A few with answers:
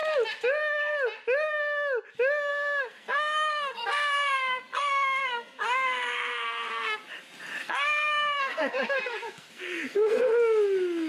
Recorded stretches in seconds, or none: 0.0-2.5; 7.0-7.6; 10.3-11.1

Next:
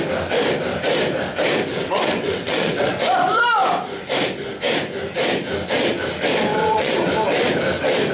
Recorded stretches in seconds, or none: 0.0-1.7; 2.9-6.5; 7.1-8.1

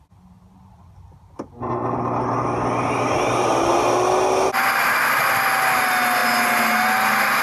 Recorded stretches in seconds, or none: 0.0-7.4

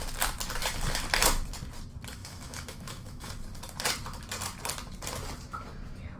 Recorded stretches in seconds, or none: 0.0-2.2; 3.3-6.2

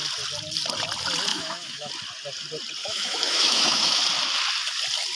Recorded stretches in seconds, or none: 0.0-1.3; 1.9-2.8; 4.0-5.2

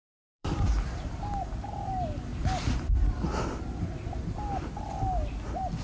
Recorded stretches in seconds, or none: 1.1-2.3; 4.6-5.8